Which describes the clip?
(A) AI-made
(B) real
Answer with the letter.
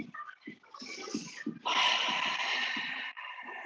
B